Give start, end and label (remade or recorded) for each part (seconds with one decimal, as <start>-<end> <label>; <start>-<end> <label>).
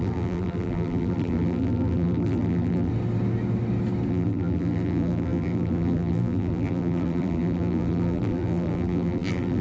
0.0-2.9 remade; 2.9-4.1 recorded; 4.1-9.6 remade